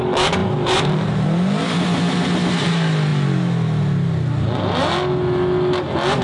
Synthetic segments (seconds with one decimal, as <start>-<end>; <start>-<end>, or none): 0.4-1.1